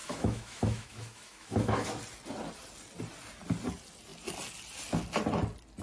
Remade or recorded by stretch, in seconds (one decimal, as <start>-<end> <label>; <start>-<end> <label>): 0.0-2.0 remade; 2.0-5.8 recorded